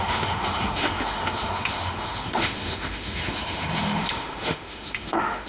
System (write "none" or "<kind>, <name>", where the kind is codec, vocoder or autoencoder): autoencoder, DAC-VAE